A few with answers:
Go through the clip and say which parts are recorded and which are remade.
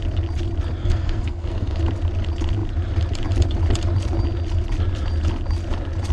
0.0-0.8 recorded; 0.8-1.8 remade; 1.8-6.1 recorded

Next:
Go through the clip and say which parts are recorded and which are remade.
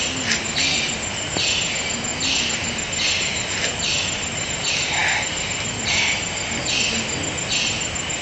0.0-8.2 recorded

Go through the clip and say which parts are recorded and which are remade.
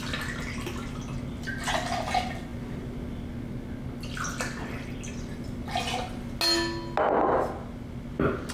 0.0-8.5 recorded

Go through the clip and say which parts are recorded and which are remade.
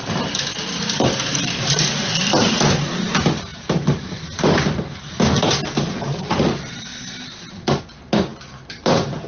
0.0-2.5 remade; 2.5-6.9 recorded; 6.9-7.8 remade; 7.8-9.3 recorded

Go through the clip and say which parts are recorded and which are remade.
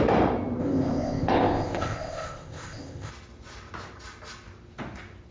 0.0-0.6 recorded; 0.6-3.1 remade; 3.1-5.3 recorded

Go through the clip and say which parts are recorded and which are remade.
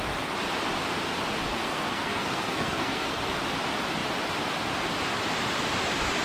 0.0-1.5 recorded; 1.5-3.4 remade; 3.4-6.2 recorded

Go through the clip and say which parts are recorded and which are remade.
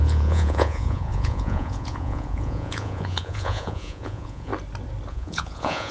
0.0-4.5 remade; 4.5-5.1 recorded; 5.1-5.9 remade